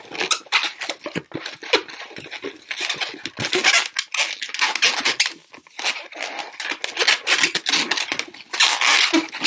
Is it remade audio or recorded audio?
recorded